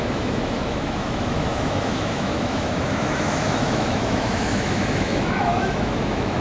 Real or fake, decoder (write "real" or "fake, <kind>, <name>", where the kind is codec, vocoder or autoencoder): fake, autoencoder, DAC-VAE